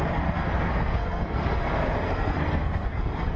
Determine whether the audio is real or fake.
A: fake